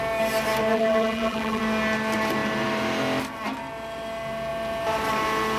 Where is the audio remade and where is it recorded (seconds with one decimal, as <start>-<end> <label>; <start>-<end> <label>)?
0.0-0.7 recorded; 0.7-1.6 remade; 1.6-5.6 recorded